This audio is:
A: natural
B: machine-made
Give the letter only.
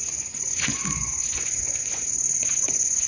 B